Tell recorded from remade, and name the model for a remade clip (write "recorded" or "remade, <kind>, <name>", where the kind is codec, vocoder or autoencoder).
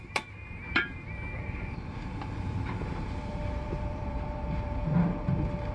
remade, vocoder, BigVGAN v2